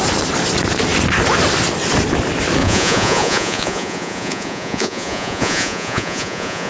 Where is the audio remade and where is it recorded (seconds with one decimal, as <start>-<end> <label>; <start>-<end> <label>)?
0.0-2.6 recorded; 2.6-6.7 remade